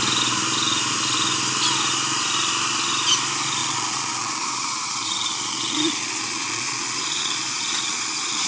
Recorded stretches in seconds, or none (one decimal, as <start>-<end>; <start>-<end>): 0.0-3.6